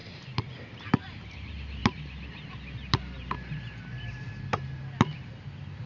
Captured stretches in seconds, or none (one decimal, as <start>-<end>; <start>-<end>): 0.9-1.8; 5.3-5.9